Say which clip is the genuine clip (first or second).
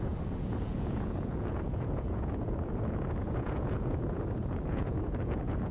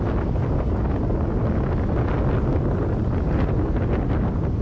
second